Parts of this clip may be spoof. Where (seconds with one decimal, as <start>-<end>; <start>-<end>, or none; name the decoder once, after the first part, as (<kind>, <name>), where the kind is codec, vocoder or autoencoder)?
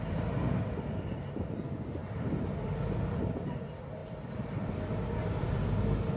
2.0-2.7 (vocoder, BigVGAN v2)